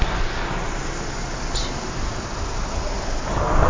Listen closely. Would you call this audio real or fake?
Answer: real